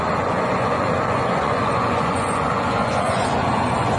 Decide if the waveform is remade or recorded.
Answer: remade